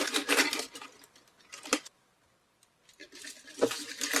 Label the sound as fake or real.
fake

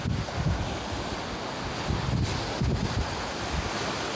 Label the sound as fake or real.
real